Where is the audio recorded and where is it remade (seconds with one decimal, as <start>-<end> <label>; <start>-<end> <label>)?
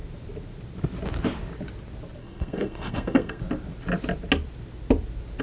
0.0-2.2 recorded; 2.2-3.4 remade; 3.4-5.4 recorded